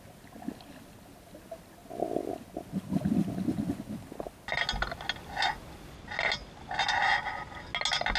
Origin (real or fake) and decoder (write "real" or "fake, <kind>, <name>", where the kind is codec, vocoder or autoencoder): real